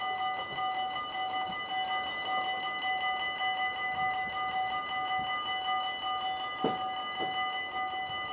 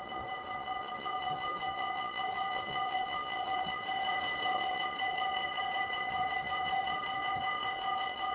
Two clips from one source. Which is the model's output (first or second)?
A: second